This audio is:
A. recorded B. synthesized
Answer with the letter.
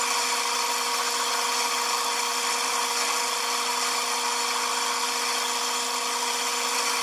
A